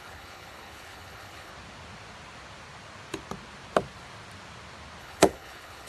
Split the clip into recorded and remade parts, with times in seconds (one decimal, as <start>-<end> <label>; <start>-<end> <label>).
0.0-1.5 remade; 1.5-5.0 recorded; 5.0-5.9 remade